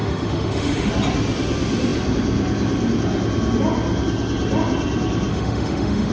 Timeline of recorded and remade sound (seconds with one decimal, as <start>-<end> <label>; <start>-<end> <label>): 0.0-0.9 remade; 0.9-5.3 recorded; 5.3-6.1 remade